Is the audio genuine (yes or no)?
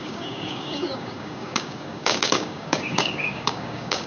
no